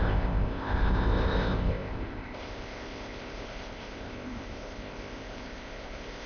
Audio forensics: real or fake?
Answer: fake